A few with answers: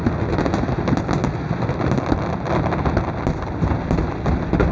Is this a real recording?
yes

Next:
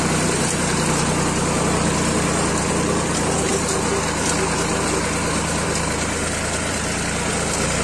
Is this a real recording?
no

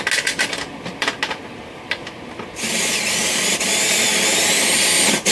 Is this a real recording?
yes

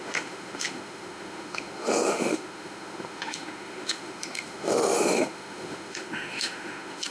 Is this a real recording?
no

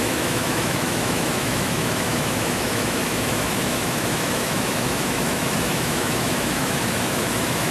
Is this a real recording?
no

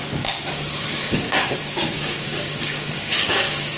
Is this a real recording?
no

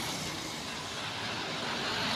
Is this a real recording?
yes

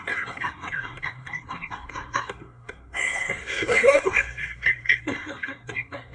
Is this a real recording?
no